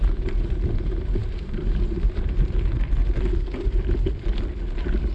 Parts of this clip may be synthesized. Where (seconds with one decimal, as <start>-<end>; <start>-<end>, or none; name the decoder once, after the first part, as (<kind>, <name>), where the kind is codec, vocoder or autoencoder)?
1.2-2.4 (vocoder, BigVGAN v2)

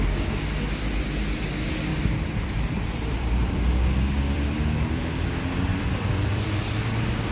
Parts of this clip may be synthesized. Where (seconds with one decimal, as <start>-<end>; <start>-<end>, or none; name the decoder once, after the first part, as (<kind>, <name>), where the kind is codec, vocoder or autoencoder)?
1.9-5.2 (vocoder, BigVGAN v2); 5.7-6.6

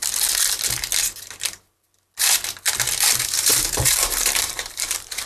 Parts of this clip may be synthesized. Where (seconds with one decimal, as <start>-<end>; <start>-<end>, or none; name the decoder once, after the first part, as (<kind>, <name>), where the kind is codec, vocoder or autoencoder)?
3.2-5.3 (vocoder, BigVGAN v2)

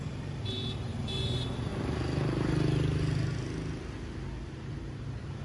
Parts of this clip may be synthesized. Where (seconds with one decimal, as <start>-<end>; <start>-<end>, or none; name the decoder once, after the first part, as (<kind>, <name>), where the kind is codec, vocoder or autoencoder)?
0.0-1.7 (vocoder, BigVGAN v2); 4.7-5.4

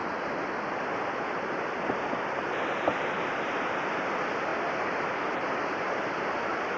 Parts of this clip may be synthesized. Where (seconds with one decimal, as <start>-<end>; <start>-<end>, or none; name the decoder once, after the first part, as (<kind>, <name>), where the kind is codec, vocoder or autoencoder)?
none

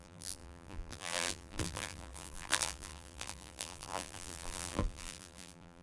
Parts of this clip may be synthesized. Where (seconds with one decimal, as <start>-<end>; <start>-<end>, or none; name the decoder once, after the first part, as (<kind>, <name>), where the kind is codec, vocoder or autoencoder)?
0.0-5.8 (vocoder, BigVGAN v2)

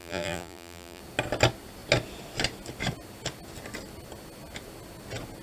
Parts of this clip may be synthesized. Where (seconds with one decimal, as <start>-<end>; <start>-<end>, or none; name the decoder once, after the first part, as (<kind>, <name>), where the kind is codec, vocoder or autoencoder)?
0.0-1.0 (vocoder, BigVGAN v2)